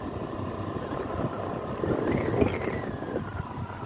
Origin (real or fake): real